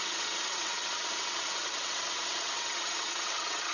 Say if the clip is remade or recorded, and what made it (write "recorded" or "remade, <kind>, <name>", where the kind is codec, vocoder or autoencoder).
remade, vocoder, WaveNeXt